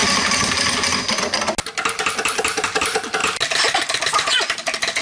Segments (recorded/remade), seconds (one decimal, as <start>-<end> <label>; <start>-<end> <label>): 0.0-5.0 recorded